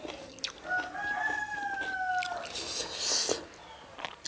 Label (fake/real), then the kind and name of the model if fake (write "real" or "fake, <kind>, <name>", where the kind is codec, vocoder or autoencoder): real